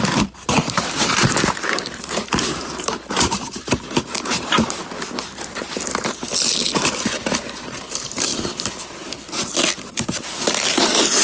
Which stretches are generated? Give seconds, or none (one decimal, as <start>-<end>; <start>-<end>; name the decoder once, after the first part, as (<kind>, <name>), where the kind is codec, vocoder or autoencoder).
0.0-4.8 (vocoder, BigVGAN v2); 7.6-8.3; 9.9-11.2